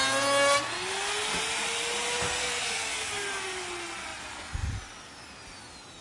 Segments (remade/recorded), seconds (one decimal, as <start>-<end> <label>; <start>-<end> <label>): 0.0-2.4 recorded; 2.4-3.1 remade; 3.1-6.0 recorded